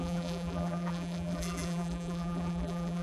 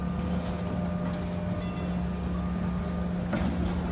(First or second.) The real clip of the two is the second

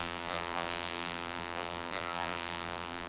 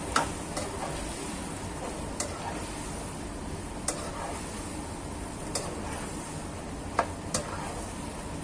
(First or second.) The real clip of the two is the second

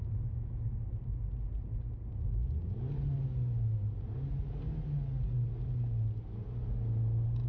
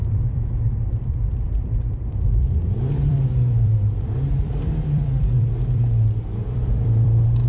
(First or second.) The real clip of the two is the first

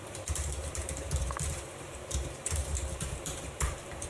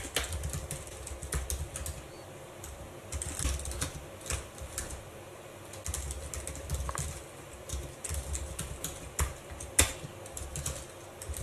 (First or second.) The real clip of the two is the second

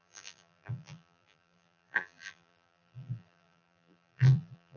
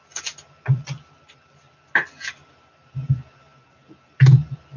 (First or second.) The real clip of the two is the second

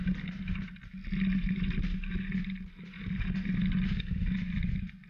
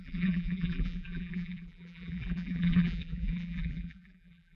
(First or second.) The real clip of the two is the first